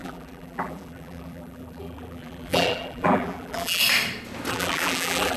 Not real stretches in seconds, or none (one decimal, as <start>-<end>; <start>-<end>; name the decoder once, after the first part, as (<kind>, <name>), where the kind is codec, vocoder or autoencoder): 0.0-3.8 (vocoder, BigVGAN v2); 4.5-5.4